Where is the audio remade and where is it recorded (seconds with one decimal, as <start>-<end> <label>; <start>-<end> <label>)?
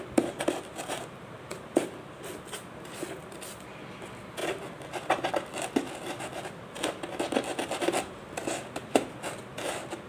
0.0-10.1 recorded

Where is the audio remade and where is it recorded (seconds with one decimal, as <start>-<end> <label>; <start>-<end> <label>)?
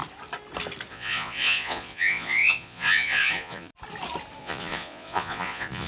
0.0-0.9 recorded; 0.9-3.7 remade; 3.7-4.4 recorded; 4.4-5.9 remade